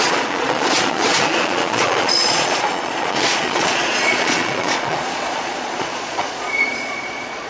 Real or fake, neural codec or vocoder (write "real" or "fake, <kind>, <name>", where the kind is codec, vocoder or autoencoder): fake, vocoder, Vocos